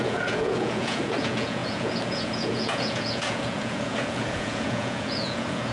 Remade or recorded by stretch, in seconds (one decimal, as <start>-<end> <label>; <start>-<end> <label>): 0.0-5.7 remade